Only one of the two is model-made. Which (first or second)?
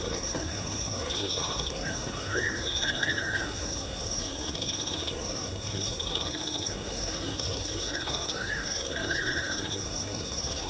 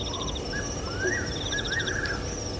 first